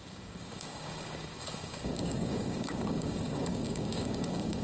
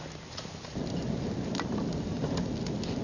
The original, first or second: second